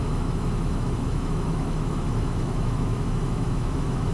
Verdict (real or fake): fake